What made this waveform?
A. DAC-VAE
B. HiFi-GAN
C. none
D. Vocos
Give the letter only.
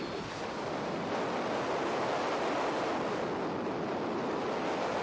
C